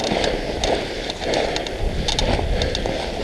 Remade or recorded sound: recorded